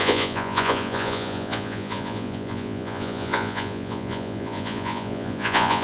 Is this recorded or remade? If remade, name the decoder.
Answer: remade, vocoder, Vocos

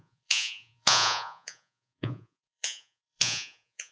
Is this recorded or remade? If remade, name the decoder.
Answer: remade, vocoder, Vocos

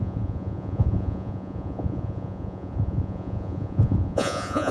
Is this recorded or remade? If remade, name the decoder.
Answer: remade, vocoder, Vocos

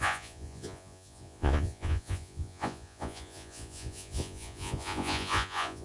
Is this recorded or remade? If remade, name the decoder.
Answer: remade, vocoder, Vocos